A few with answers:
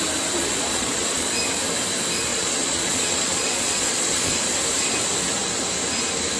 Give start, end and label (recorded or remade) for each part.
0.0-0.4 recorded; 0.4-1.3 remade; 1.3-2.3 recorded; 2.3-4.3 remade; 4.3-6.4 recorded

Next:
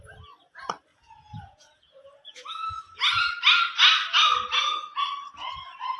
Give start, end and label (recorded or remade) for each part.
0.0-0.9 recorded; 0.9-3.0 remade; 3.0-6.0 recorded